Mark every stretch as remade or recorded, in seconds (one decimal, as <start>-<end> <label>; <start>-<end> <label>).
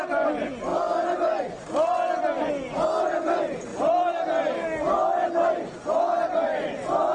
0.0-7.1 recorded